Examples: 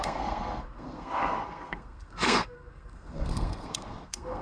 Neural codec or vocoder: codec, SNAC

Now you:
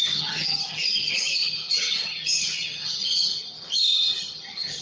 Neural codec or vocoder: vocoder, HiFi-GAN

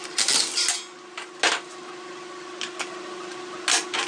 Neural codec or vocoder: none